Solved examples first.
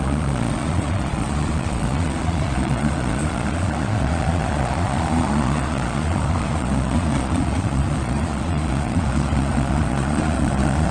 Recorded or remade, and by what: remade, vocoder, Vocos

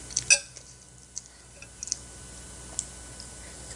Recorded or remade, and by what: recorded